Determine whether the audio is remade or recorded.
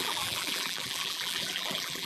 remade